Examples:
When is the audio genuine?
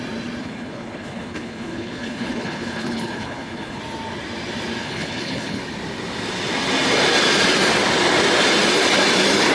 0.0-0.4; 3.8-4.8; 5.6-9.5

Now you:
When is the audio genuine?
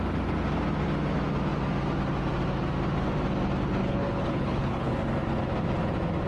0.0-3.8; 4.9-6.3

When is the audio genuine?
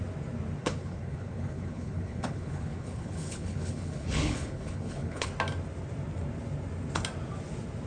0.0-0.6; 5.3-7.9